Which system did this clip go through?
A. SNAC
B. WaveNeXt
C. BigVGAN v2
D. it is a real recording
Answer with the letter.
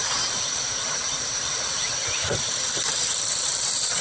C